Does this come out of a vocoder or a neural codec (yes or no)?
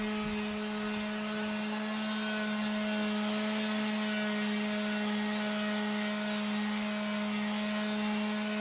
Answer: no